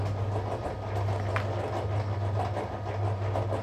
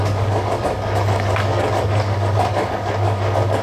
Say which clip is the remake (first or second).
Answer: second